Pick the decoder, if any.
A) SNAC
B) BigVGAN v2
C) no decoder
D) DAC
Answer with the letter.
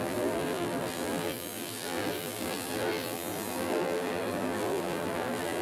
B